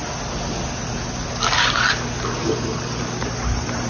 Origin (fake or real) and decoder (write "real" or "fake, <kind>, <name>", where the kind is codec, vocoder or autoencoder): real